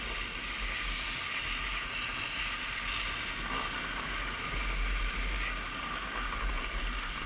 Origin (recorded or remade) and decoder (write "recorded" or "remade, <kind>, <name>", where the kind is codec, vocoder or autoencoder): recorded